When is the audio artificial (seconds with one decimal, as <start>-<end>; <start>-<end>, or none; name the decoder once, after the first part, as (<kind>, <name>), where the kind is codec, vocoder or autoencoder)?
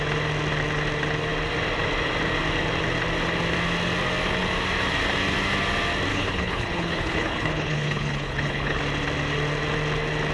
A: 6.1-8.8 (codec, HILCodec)